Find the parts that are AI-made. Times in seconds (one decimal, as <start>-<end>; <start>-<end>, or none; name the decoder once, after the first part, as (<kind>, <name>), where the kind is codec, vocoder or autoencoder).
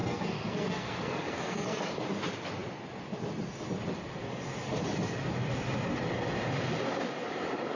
0.0-2.0 (codec, SNAC)